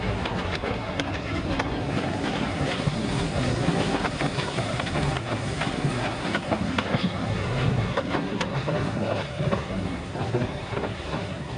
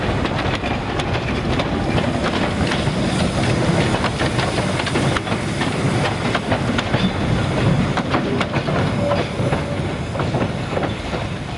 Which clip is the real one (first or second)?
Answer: second